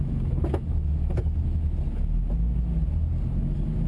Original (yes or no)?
yes